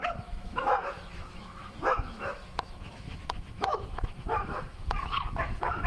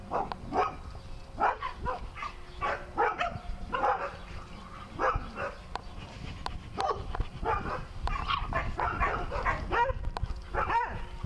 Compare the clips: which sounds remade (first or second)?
first